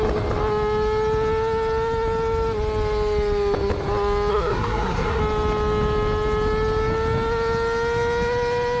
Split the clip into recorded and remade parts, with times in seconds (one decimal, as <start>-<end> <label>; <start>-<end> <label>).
0.0-4.3 recorded; 4.3-5.2 remade; 5.2-8.8 recorded